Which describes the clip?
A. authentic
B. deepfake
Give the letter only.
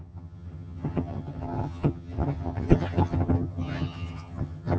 B